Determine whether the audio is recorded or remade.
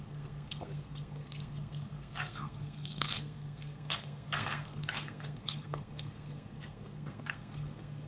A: remade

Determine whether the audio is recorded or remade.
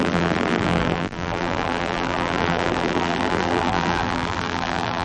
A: remade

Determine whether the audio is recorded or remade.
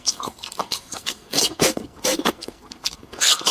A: remade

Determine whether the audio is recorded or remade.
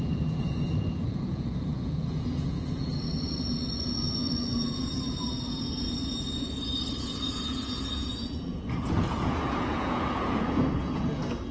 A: remade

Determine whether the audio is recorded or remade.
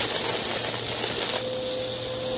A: recorded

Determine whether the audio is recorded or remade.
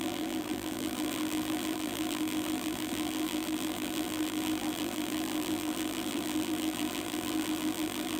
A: remade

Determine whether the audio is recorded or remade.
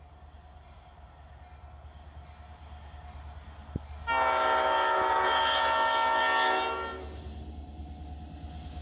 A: recorded